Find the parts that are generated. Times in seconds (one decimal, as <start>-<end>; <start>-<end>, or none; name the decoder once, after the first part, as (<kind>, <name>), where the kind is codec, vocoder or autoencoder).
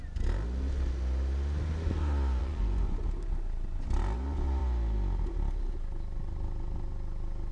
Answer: 2.4-3.0 (vocoder, Vocos)